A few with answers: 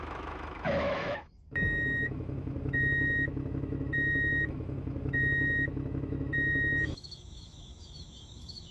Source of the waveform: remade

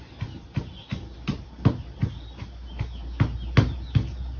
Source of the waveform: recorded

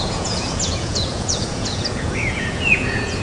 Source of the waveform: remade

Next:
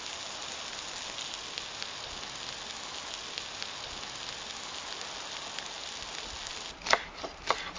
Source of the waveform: recorded